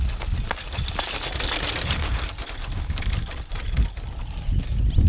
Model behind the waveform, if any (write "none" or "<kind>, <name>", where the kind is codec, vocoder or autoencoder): none